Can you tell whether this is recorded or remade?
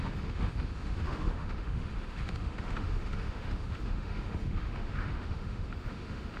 remade